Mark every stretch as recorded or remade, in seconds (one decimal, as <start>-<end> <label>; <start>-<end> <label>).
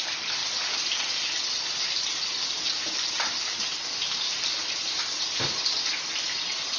0.0-6.8 recorded